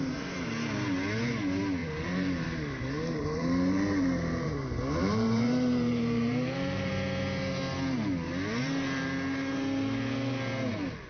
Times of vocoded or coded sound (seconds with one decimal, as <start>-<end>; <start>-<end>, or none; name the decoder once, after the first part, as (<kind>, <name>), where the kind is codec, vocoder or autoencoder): 1.8-6.9 (vocoder, BigVGAN v2)